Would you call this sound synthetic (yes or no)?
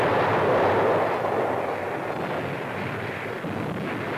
no